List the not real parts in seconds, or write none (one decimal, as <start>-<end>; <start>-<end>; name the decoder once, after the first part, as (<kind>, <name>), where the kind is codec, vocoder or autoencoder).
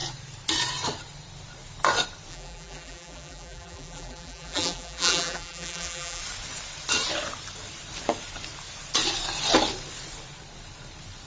2.3-6.2 (vocoder, BigVGAN v2)